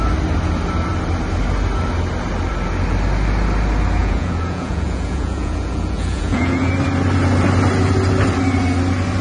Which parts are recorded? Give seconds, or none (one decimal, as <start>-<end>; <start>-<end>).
0.0-4.0; 6.7-9.2